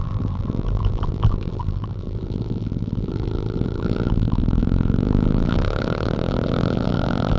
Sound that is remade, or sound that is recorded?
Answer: remade